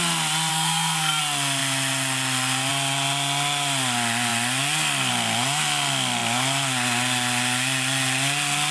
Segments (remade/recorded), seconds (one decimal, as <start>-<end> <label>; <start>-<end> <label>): 0.0-0.5 recorded; 0.5-1.2 remade; 1.2-8.7 recorded